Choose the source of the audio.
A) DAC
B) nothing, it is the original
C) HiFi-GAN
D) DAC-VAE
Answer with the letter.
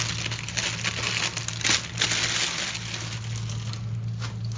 B